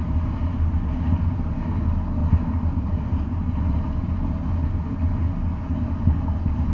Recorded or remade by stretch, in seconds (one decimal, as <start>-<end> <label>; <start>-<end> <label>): 0.0-6.7 recorded